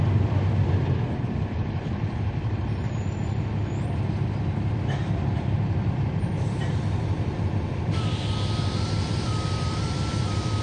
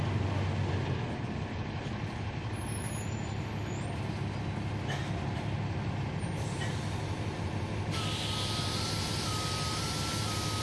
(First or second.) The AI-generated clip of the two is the first